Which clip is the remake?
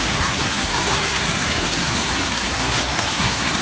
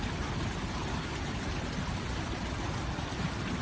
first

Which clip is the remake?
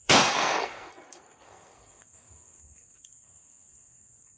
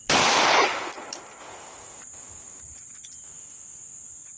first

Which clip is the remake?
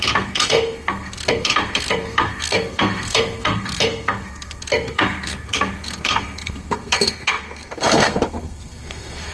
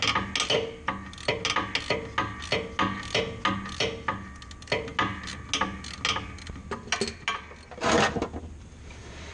first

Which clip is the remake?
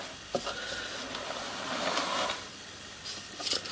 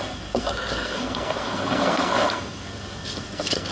second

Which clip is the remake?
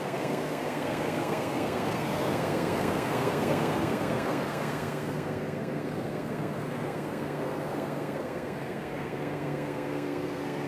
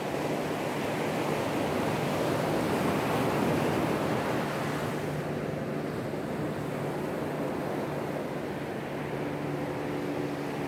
first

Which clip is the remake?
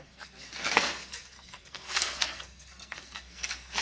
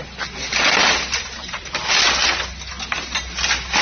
first